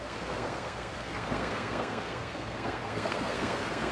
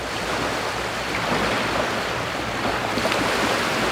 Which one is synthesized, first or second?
first